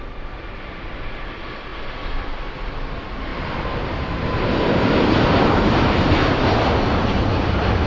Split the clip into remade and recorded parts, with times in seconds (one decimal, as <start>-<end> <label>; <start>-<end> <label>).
0.0-7.9 recorded